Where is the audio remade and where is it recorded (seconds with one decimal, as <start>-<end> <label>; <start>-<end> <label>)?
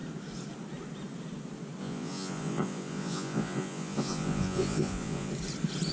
0.0-1.8 recorded; 1.8-5.3 remade; 5.3-5.9 recorded